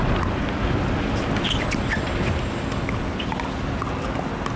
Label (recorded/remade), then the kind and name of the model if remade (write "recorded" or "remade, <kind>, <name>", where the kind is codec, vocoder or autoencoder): recorded